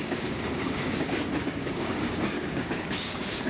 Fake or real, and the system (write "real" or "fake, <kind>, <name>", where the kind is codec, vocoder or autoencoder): fake, codec, DAC